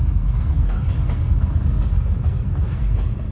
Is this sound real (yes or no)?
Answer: no